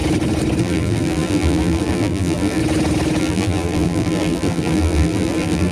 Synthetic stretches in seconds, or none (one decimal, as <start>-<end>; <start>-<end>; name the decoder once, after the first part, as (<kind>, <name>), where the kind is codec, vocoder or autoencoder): 0.6-2.6 (vocoder, BigVGAN v2); 3.2-5.7

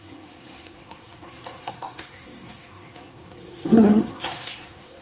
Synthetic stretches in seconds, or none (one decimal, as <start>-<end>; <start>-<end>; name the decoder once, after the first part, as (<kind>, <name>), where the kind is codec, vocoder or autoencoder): 0.0-5.0 (codec, SNAC)

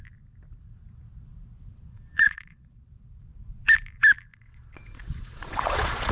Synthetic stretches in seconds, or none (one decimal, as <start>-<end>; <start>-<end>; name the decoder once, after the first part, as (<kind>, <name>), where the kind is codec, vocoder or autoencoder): 1.9-2.8 (vocoder, Vocos); 4.3-6.1